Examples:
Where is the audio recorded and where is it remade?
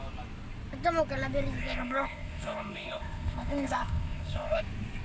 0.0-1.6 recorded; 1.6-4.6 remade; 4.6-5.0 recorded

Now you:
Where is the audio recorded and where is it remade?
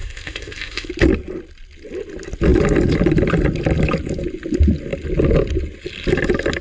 0.0-0.9 remade; 0.9-6.6 recorded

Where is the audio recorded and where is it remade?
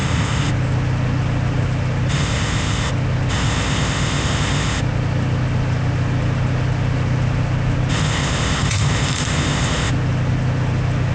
0.0-0.5 remade; 0.5-2.1 recorded; 2.1-2.9 remade; 2.9-3.3 recorded; 3.3-4.8 remade; 4.8-7.9 recorded; 7.9-9.9 remade; 9.9-11.1 recorded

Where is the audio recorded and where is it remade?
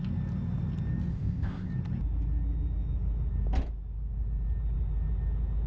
0.0-1.1 recorded; 1.1-1.7 remade; 1.7-5.7 recorded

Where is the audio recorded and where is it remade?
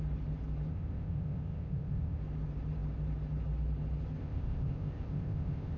0.0-0.7 recorded; 0.7-2.2 remade; 2.2-4.2 recorded; 4.2-5.8 remade